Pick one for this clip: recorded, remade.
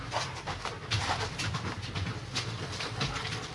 recorded